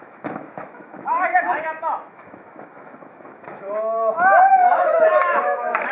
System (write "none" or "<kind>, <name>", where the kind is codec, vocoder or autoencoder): autoencoder, DAC-VAE